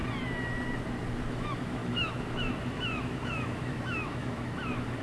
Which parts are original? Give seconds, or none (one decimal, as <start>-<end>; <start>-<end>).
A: 0.0-1.2